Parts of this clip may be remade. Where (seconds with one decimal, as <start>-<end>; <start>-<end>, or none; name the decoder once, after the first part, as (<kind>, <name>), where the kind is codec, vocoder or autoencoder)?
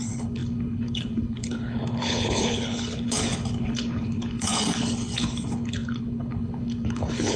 0.0-7.4 (codec, HILCodec)